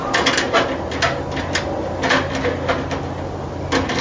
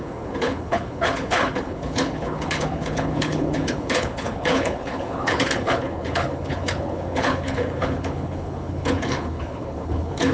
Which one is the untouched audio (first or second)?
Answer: first